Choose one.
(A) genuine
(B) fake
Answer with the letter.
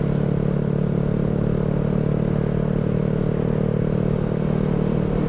A